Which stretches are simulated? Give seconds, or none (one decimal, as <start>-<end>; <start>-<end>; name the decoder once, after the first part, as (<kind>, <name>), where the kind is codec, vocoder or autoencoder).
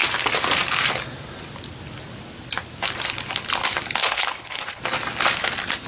4.0-4.8 (codec, HILCodec)